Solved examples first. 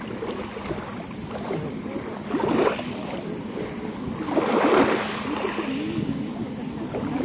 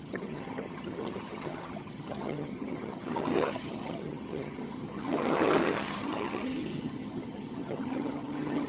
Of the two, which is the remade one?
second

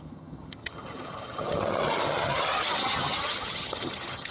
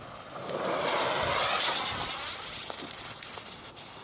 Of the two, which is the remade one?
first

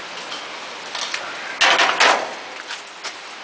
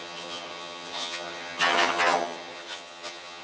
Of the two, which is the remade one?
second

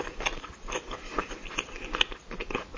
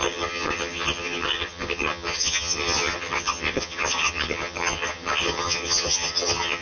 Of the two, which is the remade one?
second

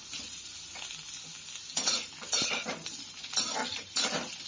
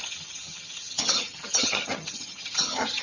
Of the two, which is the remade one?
second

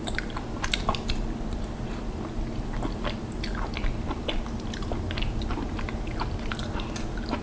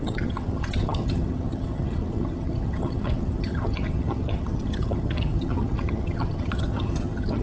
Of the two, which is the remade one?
second